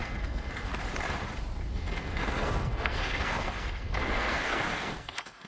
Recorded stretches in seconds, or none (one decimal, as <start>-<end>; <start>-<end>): 0.7-1.7